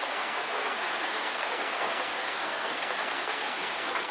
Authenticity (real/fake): fake